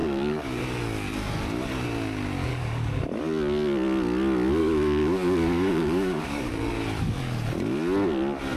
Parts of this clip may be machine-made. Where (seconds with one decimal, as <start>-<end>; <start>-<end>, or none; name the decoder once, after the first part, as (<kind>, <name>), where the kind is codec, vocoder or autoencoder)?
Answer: 0.0-0.6 (codec, DAC); 2.5-3.2; 4.6-6.5